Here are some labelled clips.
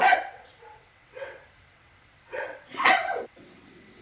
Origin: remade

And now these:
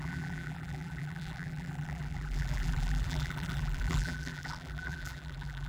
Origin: remade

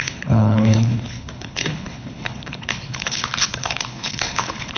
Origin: remade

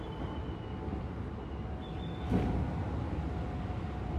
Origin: recorded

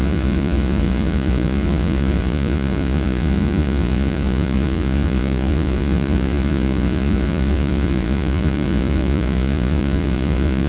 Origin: remade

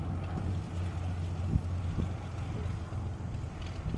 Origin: recorded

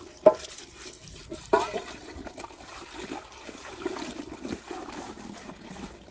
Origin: recorded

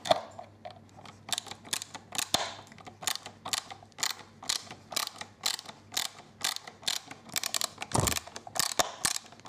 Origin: recorded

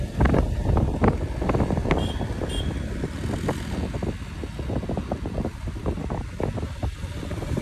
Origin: recorded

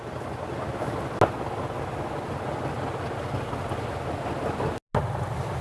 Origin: recorded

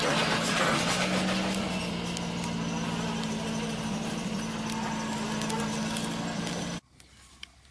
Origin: recorded